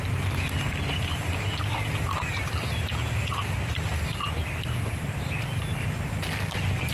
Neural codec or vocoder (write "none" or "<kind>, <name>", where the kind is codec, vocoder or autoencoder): none